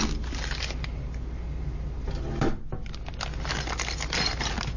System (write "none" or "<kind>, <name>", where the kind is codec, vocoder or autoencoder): none